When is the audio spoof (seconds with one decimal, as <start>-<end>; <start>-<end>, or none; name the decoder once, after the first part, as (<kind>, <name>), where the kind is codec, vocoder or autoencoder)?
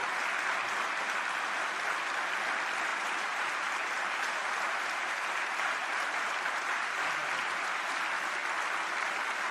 2.9-8.0 (vocoder, BigVGAN v2)